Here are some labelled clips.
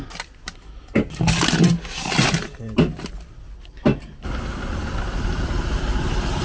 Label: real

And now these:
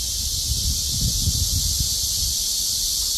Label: real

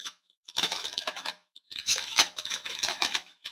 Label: fake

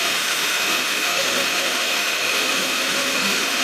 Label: fake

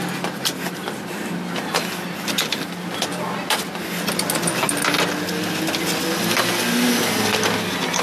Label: real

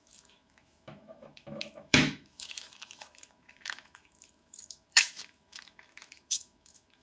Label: fake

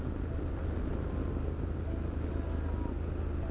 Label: real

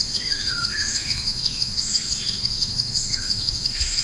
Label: fake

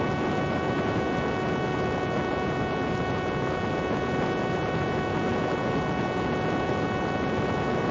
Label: real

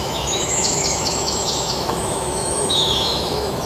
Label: fake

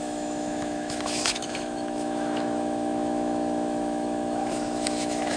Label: fake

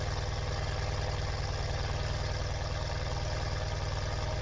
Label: real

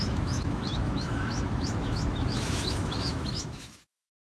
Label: fake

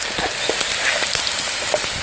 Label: real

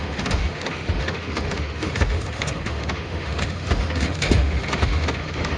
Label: fake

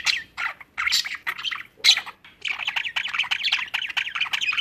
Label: real